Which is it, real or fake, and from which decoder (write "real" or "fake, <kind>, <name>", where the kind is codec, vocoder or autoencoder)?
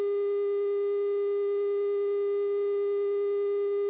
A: real